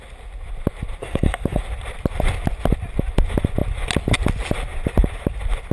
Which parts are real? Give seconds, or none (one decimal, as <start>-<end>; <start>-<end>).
0.0-1.0; 1.6-5.7